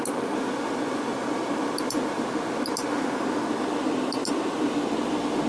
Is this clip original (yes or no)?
yes